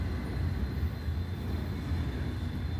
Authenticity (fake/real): real